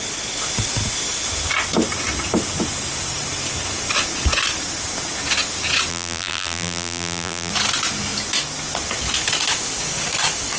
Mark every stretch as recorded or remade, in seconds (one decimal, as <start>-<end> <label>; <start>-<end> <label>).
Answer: 0.0-5.9 recorded; 5.9-7.5 remade; 7.5-10.6 recorded